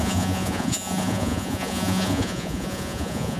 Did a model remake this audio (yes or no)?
yes